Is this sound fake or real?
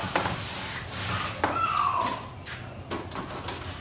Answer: real